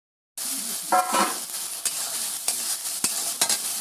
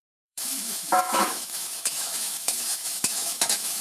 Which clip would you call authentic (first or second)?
first